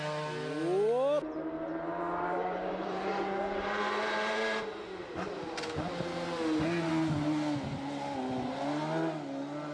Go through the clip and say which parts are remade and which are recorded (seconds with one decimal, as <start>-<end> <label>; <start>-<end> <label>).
0.0-1.7 recorded; 1.7-6.9 remade; 6.9-9.7 recorded